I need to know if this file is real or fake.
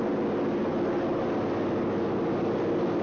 real